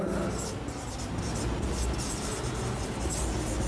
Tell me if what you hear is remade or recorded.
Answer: recorded